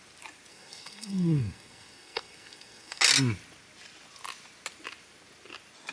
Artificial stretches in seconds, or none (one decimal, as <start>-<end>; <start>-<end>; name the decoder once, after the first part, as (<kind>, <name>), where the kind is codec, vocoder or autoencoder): 0.5-3.0 (codec, SNAC)